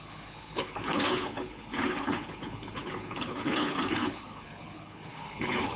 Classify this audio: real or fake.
fake